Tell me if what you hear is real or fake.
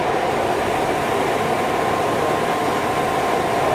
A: real